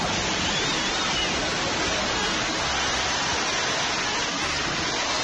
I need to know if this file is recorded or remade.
recorded